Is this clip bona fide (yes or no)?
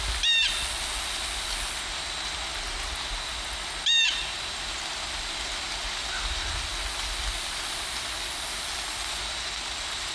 yes